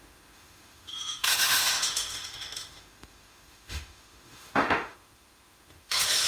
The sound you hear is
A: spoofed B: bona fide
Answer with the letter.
A